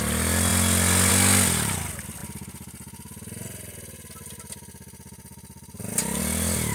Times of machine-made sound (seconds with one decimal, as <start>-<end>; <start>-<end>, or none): none